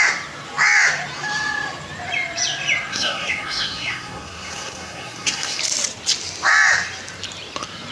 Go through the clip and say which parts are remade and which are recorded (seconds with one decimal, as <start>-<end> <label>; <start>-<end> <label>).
0.0-2.9 recorded; 2.9-5.6 remade; 5.6-7.9 recorded